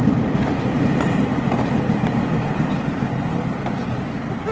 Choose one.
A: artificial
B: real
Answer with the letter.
B